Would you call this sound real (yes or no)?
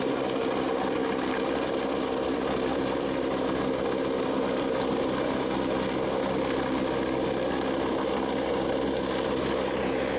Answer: yes